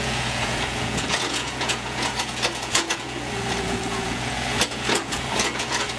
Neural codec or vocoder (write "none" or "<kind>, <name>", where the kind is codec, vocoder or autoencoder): vocoder, Vocos